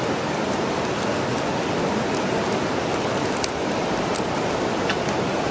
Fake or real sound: real